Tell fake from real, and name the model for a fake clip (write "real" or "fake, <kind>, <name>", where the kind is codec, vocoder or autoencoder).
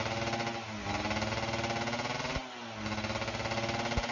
real